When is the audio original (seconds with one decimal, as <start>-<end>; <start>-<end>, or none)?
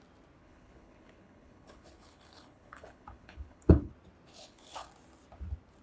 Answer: 0.0-0.4; 3.9-4.3; 4.9-5.8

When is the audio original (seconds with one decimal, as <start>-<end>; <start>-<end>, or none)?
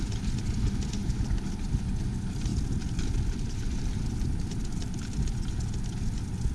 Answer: 0.0-1.0; 1.7-2.5; 5.2-6.5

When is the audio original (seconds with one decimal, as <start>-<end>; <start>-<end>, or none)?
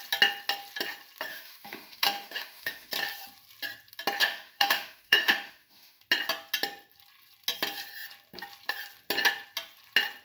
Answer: 0.0-1.3; 2.9-4.2; 6.0-10.2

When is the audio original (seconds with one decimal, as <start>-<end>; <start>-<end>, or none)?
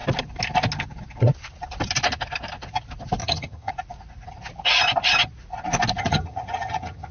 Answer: 0.0-3.2; 3.7-6.0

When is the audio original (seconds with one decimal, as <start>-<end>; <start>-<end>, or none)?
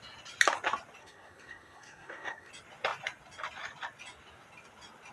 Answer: 0.0-1.0; 2.5-5.1